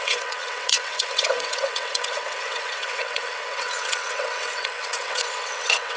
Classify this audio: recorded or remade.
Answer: remade